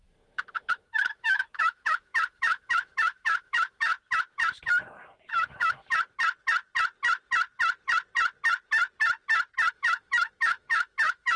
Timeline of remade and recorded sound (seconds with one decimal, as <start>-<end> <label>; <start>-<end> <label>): 0.0-3.9 remade; 3.9-5.3 recorded; 5.3-5.8 remade; 5.8-9.7 recorded; 9.7-11.4 remade